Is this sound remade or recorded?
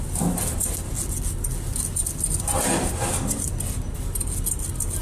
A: recorded